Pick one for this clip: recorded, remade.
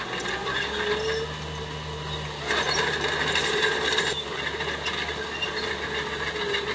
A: recorded